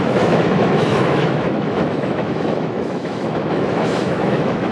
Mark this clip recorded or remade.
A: remade